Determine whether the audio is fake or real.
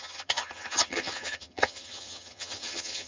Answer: fake